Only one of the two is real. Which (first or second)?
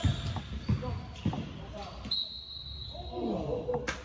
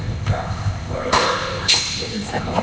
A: first